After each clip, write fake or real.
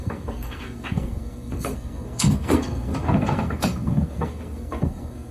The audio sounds fake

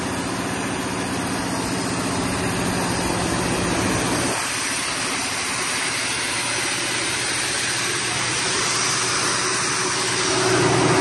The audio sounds real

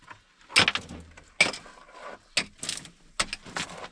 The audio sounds real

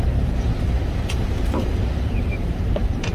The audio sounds fake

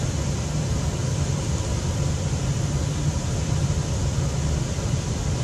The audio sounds real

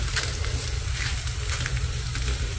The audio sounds real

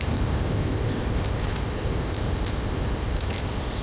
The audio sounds fake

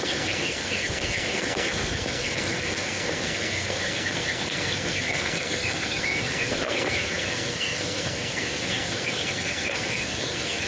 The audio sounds fake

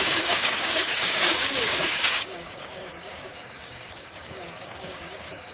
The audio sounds fake